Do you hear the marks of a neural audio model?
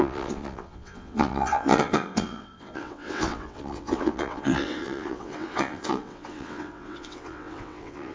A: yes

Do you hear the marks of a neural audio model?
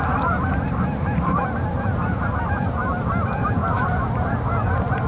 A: yes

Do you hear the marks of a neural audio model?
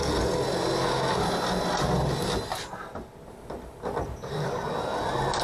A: no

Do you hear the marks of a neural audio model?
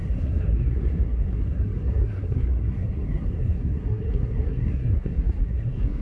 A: yes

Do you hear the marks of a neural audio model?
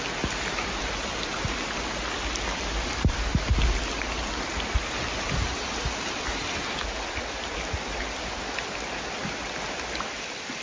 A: no